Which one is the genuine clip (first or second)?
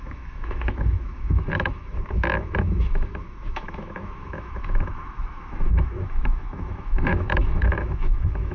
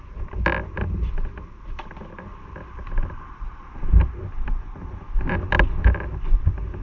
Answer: second